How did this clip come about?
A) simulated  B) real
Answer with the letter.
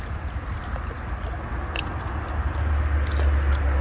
B